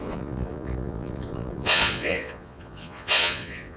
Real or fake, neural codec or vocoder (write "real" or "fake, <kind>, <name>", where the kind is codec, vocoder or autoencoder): fake, vocoder, Vocos